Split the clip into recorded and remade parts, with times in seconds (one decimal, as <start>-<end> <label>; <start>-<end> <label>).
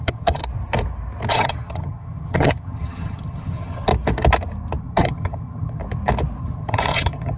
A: 0.0-0.4 remade; 0.4-1.3 recorded; 1.3-3.9 remade; 3.9-4.8 recorded; 4.8-5.8 remade; 5.8-6.4 recorded; 6.4-7.4 remade